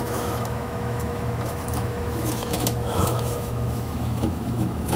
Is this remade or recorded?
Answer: remade